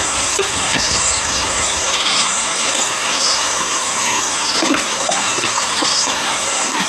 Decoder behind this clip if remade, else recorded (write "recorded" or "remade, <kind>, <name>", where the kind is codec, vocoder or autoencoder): remade, codec, SNAC